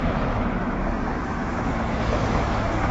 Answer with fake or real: fake